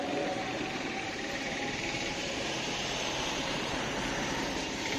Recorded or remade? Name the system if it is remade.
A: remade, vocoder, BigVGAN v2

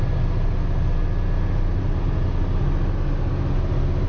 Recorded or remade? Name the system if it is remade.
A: recorded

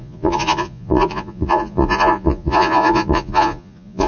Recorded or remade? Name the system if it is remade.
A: remade, vocoder, Vocos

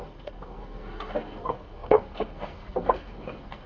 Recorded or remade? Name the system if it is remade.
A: remade, codec, SNAC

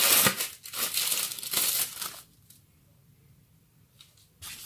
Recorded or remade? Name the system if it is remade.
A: recorded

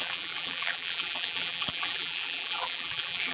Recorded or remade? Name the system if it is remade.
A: remade, vocoder, BigVGAN v2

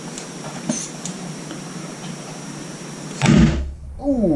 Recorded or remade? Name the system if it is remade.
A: recorded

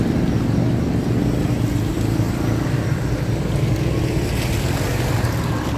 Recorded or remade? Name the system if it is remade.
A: recorded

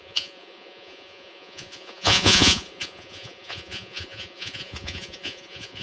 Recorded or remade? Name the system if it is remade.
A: remade, vocoder, Vocos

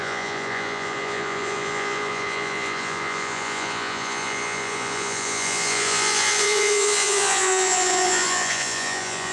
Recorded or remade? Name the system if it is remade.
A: remade, vocoder, Vocos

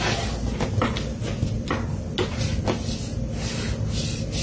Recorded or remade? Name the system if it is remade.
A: recorded